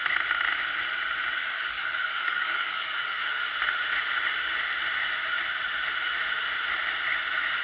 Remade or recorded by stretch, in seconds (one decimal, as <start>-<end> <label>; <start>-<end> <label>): 0.0-1.4 recorded; 1.4-3.4 remade; 3.4-7.6 recorded